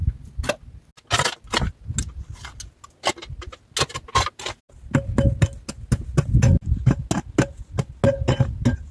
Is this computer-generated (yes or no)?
no